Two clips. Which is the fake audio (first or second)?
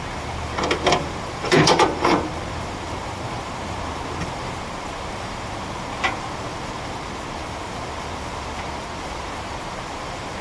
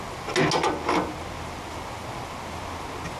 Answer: first